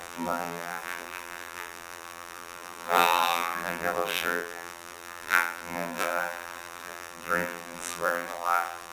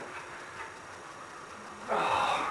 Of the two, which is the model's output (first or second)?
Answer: first